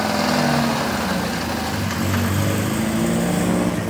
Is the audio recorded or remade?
recorded